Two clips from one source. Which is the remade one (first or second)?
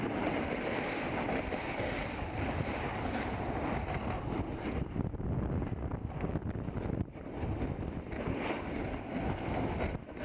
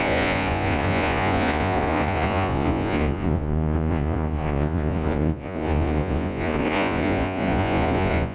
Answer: second